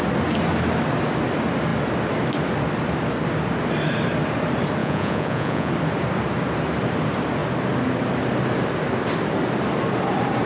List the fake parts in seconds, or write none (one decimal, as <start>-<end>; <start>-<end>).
4.8-5.7